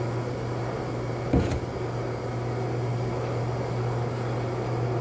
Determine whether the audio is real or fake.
real